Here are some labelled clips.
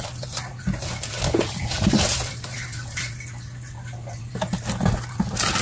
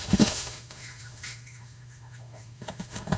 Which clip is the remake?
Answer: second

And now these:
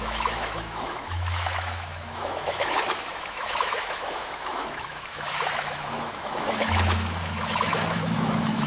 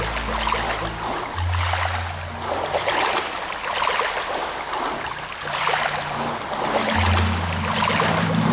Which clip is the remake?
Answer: first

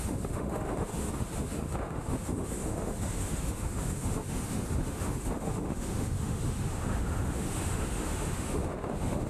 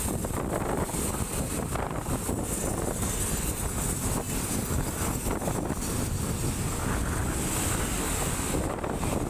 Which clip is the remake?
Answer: first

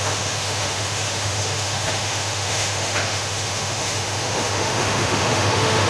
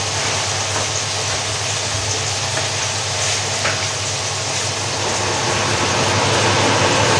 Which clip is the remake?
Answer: first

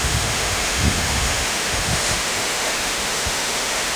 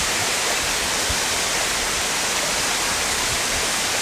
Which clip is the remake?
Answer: first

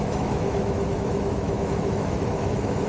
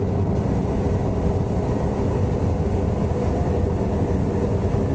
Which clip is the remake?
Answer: first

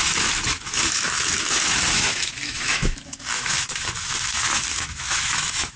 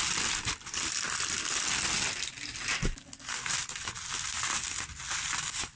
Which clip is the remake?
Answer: first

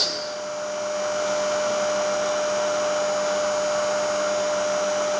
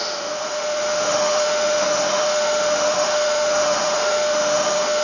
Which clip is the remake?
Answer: second